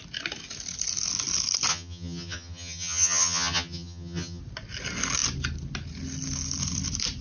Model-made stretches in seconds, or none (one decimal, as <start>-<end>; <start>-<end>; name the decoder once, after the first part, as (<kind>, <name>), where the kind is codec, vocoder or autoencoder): 1.7-4.4 (vocoder, HiFi-GAN)